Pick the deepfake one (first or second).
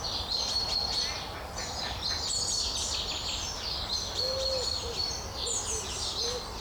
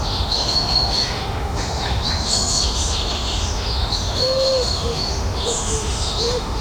second